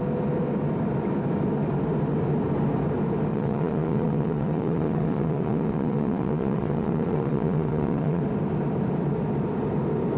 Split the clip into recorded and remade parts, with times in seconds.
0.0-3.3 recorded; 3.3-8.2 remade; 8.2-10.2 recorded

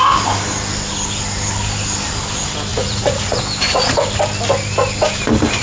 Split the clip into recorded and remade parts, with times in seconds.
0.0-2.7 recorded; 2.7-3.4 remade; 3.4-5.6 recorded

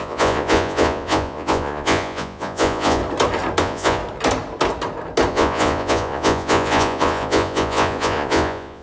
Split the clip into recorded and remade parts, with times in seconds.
0.0-3.0 remade; 3.0-3.6 recorded; 3.6-4.0 remade; 4.0-5.3 recorded; 5.3-8.8 remade

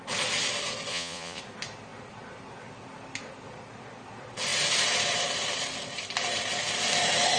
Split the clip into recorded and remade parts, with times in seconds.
0.0-0.9 recorded; 0.9-1.4 remade; 1.4-7.4 recorded

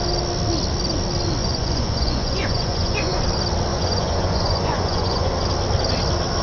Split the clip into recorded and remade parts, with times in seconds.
0.0-1.4 recorded; 1.4-3.2 remade; 3.2-3.7 recorded; 3.7-5.3 remade; 5.3-6.4 recorded

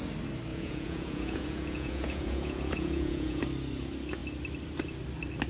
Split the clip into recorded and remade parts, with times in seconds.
0.0-0.5 recorded; 0.5-3.4 remade; 3.4-5.5 recorded

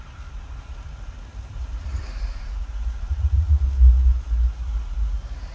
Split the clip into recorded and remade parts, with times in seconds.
0.0-1.6 recorded; 1.6-3.6 remade; 3.6-5.5 recorded